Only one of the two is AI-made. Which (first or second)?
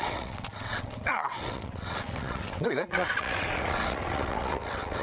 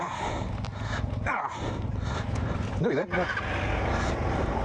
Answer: first